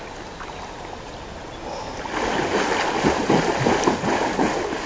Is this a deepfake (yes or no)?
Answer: no